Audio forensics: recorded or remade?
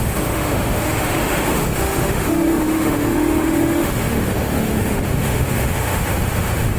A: remade